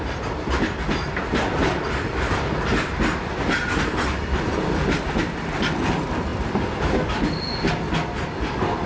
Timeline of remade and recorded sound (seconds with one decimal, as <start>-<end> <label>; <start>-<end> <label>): 0.0-8.9 recorded